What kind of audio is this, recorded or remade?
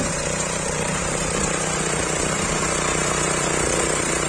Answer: remade